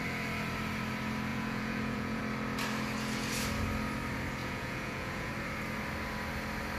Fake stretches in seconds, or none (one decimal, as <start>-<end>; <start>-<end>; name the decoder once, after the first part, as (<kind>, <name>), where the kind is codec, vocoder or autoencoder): 1.3-2.2 (vocoder, Vocos); 4.4-5.3